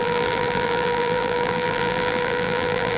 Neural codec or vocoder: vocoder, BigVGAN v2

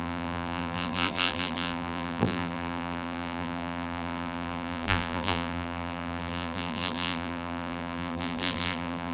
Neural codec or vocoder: vocoder, BigVGAN v2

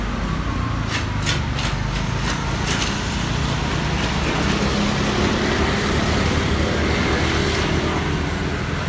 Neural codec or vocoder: none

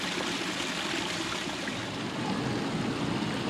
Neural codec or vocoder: none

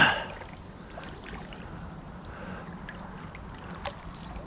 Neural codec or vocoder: none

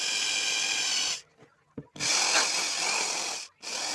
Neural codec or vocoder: none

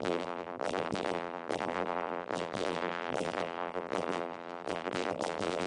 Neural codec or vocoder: vocoder, BigVGAN v2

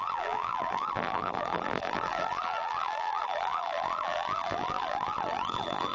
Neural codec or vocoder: vocoder, BigVGAN v2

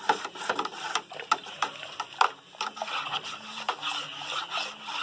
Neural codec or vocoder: none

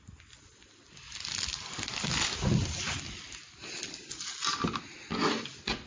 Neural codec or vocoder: none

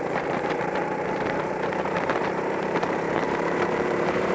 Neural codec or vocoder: vocoder, BigVGAN v2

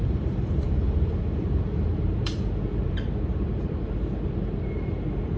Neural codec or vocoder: vocoder, BigVGAN v2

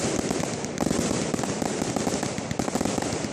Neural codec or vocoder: none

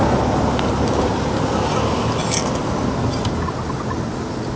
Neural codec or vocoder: none